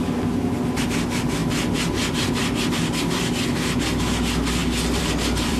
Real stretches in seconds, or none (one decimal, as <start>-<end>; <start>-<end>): 0.0-4.6